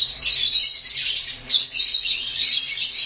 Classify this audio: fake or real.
fake